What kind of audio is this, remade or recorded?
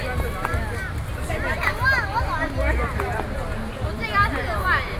recorded